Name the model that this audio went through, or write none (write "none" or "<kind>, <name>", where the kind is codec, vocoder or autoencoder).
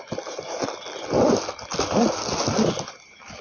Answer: none